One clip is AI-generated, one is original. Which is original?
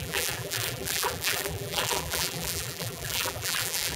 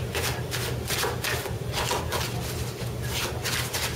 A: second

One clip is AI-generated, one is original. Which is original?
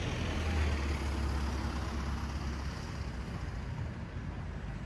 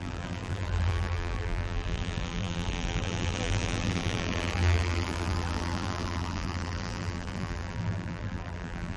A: first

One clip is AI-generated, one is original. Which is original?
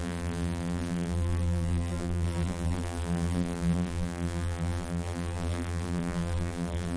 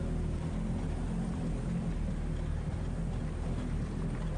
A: second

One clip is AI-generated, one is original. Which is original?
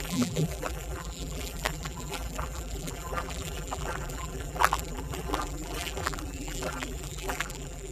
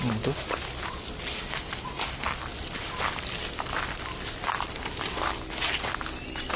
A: second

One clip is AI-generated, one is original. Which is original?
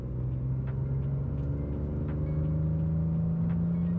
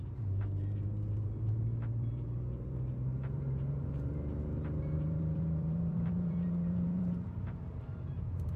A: first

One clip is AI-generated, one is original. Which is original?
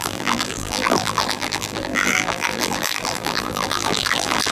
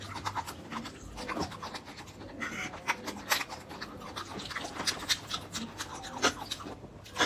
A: second